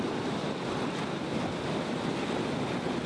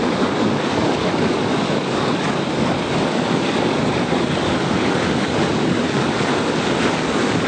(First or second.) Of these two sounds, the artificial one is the second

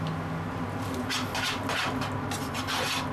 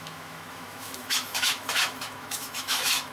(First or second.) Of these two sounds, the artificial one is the second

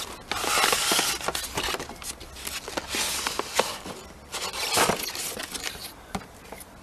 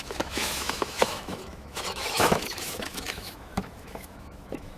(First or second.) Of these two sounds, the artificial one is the second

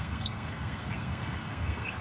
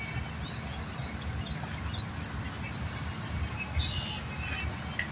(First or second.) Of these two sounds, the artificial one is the first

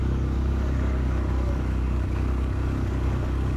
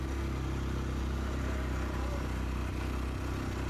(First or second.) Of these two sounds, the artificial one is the first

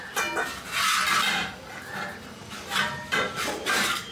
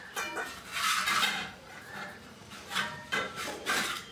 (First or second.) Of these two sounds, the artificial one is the second